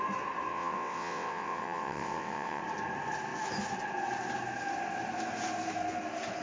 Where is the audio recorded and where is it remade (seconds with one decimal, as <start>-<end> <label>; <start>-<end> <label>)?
0.0-0.5 recorded; 0.5-2.6 remade; 2.6-6.4 recorded